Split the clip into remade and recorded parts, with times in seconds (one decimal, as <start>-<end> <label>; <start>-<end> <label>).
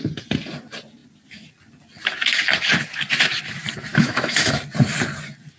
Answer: 0.0-3.9 recorded; 3.9-4.6 remade; 4.6-5.6 recorded